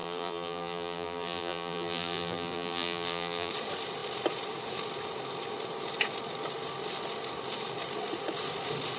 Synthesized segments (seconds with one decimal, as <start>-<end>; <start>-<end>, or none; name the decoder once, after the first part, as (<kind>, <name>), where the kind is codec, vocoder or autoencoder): 0.0-3.5 (vocoder, BigVGAN v2)